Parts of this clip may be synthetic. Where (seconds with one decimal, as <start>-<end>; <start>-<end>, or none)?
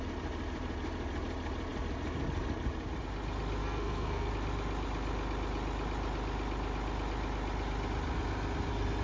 3.6-4.3